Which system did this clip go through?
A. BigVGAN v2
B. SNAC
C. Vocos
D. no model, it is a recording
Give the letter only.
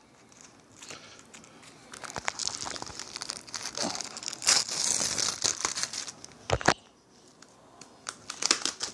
D